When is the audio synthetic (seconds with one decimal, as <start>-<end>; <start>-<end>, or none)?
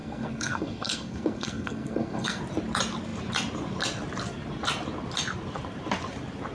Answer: 0.0-2.4